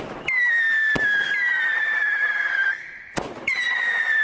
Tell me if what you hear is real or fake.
real